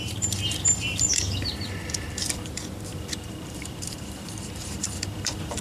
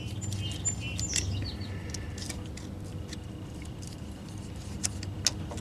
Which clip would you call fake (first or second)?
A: first